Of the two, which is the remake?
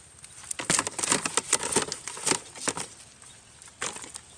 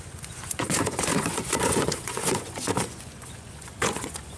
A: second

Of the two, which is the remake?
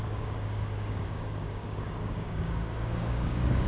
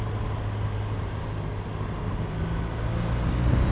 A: first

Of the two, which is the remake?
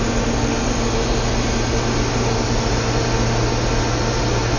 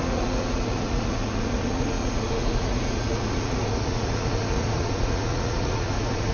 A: second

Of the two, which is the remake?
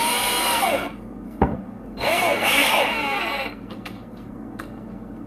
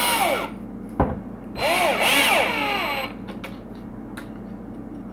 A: first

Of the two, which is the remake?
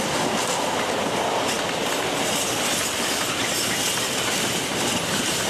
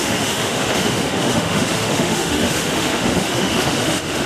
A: second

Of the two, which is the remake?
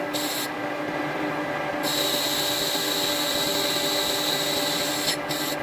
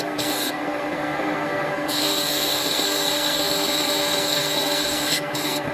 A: second